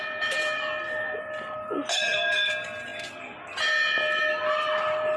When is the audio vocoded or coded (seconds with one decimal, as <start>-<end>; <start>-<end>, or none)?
1.9-2.5